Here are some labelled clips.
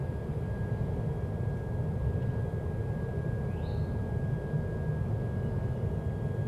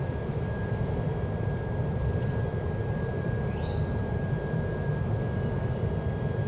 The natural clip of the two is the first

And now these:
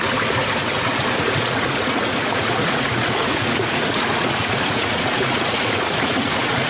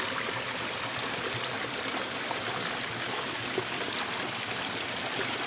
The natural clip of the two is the second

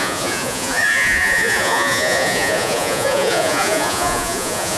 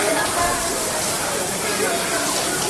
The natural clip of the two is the second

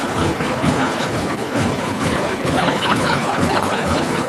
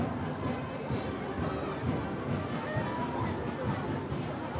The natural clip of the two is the second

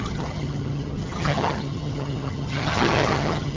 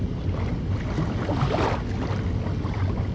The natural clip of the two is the second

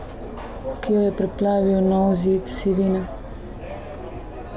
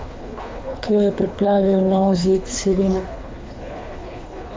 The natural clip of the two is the first